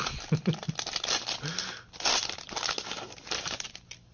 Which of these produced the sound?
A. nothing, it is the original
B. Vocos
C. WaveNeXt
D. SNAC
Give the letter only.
A